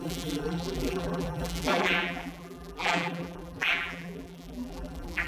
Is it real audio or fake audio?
fake